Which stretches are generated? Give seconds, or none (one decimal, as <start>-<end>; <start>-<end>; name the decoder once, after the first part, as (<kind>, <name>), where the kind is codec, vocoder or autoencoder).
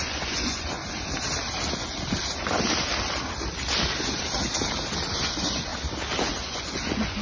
0.0-0.8 (vocoder, Vocos); 5.1-5.7; 6.3-7.2